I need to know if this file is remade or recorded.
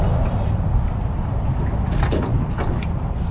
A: recorded